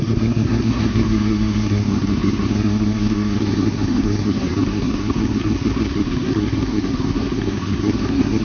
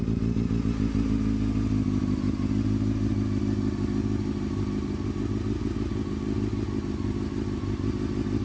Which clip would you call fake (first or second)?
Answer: first